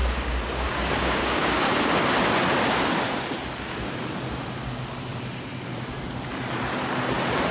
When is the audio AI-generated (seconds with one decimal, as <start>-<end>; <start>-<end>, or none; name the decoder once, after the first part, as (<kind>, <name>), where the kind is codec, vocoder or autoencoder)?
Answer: 0.0-1.9 (codec, DAC)